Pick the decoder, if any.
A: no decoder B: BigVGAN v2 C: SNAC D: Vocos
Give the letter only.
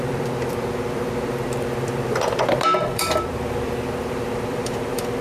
B